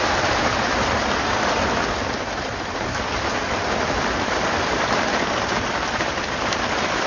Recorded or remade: remade